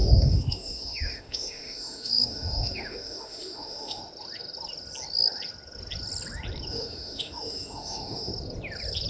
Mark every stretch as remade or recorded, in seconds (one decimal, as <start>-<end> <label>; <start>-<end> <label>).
0.0-4.0 remade; 4.0-6.7 recorded; 6.7-8.3 remade; 8.3-9.1 recorded